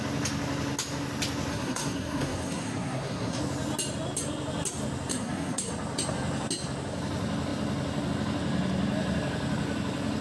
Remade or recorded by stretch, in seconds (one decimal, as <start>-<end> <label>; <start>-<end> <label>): 0.0-1.5 recorded; 1.5-3.4 remade; 3.4-5.1 recorded; 5.1-5.7 remade; 5.7-10.2 recorded